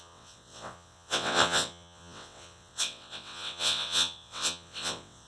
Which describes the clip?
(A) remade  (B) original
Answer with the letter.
A